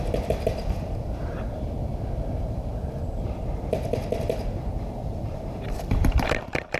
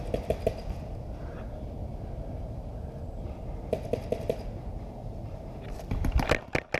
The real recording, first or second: second